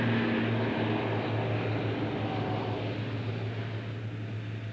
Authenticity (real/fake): real